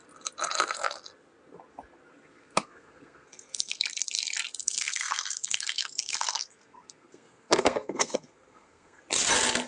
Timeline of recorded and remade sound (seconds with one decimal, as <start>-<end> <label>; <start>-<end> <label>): 0.0-2.3 recorded; 2.3-3.8 remade; 3.8-4.6 recorded; 4.6-9.0 remade; 9.0-9.7 recorded

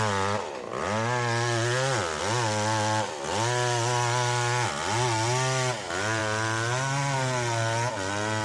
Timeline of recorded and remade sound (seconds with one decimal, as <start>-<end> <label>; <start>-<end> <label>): 0.0-8.4 recorded

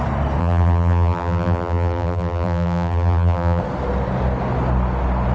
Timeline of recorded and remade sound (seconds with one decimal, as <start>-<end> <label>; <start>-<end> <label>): 0.0-0.4 recorded; 0.4-3.6 remade; 3.6-5.3 recorded

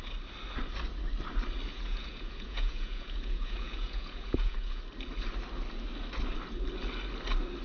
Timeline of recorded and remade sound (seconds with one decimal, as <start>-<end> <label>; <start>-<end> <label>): 0.0-1.7 recorded; 1.7-4.8 remade; 4.8-7.6 recorded

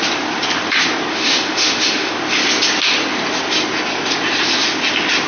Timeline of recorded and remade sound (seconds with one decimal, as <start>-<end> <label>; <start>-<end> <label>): 0.0-1.1 recorded; 1.1-2.1 remade; 2.1-5.3 recorded

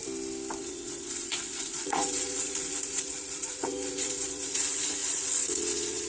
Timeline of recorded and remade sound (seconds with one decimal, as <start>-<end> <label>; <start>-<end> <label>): 0.0-0.6 recorded; 0.6-6.1 remade

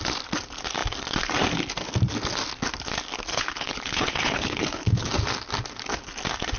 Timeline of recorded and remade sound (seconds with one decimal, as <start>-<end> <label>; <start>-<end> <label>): 0.0-3.3 recorded; 3.3-5.1 remade; 5.1-6.6 recorded